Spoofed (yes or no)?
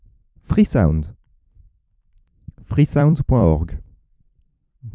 yes